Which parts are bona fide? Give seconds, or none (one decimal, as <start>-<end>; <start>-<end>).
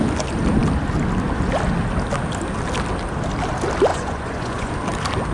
0.0-3.9; 4.7-5.3